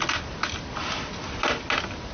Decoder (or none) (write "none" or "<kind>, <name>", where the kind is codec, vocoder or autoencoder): none